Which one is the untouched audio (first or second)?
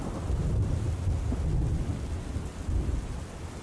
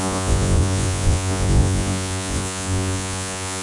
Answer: first